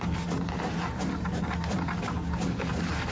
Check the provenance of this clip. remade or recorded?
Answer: recorded